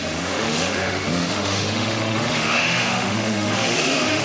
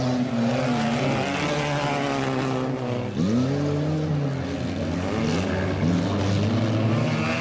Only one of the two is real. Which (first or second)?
second